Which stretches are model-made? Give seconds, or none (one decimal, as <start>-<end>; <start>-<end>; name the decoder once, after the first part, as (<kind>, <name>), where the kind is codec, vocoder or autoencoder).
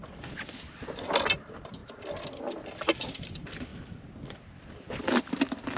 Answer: none